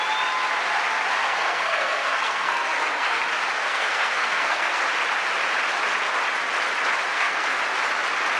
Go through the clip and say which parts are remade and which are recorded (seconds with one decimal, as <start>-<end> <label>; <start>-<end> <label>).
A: 0.0-1.2 recorded; 1.2-3.2 remade; 3.2-3.6 recorded; 3.6-4.8 remade; 4.8-7.1 recorded; 7.1-7.6 remade; 7.6-8.4 recorded